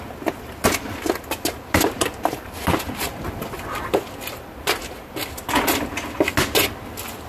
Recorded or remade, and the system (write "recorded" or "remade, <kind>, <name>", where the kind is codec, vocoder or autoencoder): recorded